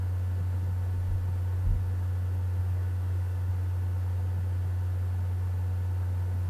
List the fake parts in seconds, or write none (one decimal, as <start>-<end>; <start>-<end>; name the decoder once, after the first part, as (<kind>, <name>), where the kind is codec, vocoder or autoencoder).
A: 2.6-3.5 (codec, DAC)